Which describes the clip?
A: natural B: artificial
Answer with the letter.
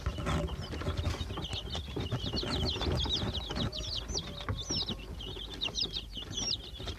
A